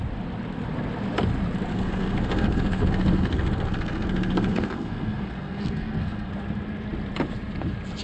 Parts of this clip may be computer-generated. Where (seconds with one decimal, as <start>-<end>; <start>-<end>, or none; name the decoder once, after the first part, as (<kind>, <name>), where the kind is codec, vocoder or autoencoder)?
1.7-6.3 (codec, SNAC)